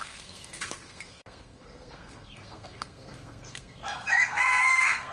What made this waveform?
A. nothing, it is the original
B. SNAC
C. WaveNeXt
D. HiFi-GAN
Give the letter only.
B